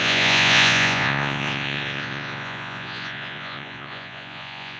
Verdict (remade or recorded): remade